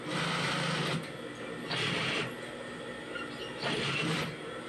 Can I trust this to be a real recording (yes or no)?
yes